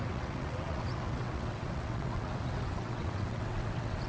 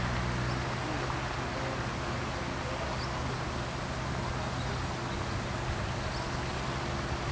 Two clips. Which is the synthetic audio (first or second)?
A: first